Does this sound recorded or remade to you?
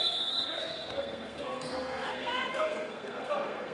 remade